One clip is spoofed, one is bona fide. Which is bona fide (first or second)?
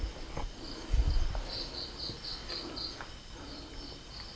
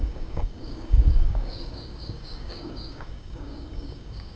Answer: first